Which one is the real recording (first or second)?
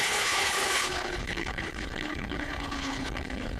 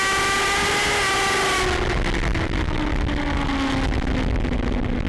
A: second